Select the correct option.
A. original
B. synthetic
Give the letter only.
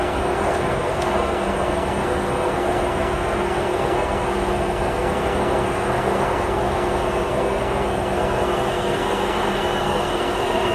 B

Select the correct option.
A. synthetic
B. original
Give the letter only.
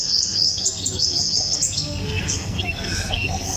A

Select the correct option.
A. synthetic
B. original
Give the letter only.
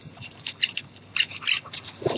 B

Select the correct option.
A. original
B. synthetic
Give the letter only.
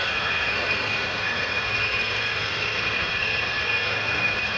B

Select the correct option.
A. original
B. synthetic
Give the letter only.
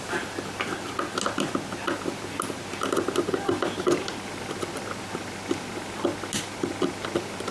A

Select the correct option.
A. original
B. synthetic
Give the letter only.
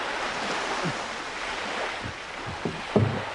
A